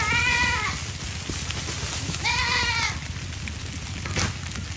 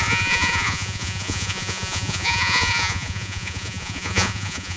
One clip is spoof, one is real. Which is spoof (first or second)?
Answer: second